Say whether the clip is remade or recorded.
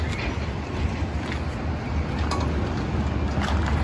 recorded